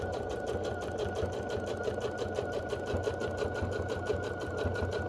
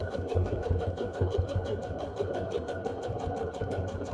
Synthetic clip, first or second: second